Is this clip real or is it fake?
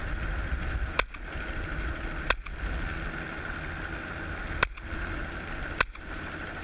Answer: real